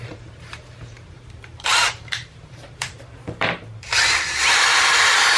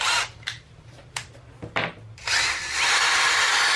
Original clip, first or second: second